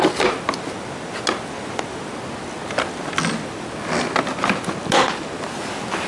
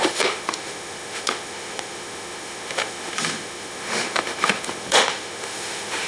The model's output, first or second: second